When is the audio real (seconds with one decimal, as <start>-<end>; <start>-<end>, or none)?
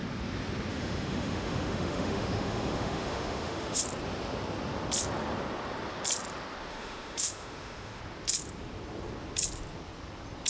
0.0-0.7; 3.8-6.7; 8.0-10.5